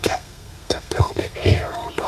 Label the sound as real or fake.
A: fake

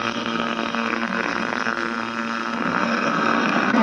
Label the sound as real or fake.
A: fake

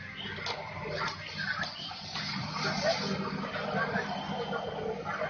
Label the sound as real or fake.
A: real